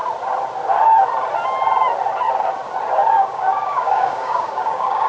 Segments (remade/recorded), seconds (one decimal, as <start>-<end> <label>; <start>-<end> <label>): 0.0-3.1 recorded; 3.1-5.1 remade